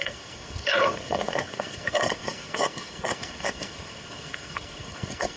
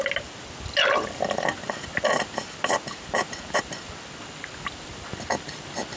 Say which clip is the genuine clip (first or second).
second